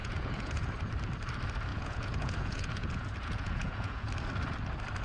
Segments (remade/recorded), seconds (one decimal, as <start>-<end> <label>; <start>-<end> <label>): 0.0-0.7 remade; 0.7-1.7 recorded; 1.7-4.1 remade; 4.1-5.0 recorded